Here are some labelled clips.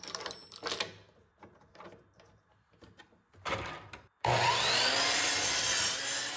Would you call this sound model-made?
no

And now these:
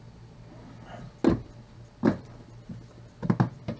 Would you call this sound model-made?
no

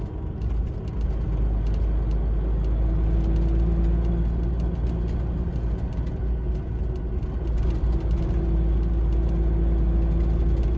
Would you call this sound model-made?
no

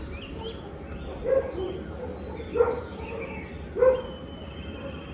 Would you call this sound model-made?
no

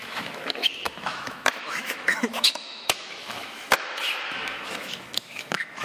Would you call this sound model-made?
yes